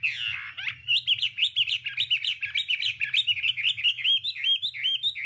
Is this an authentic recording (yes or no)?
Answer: yes